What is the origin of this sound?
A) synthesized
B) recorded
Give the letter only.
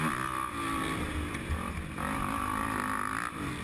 B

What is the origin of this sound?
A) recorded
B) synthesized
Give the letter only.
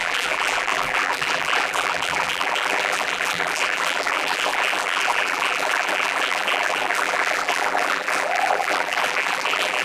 B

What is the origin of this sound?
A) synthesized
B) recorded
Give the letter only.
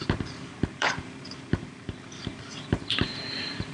A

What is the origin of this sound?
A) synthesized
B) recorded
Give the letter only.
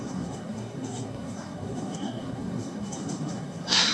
A